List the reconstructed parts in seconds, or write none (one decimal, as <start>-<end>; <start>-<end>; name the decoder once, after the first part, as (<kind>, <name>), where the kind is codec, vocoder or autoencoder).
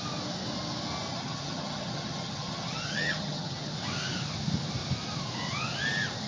1.1-3.7 (vocoder, HiFi-GAN)